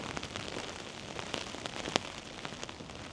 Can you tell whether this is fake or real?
real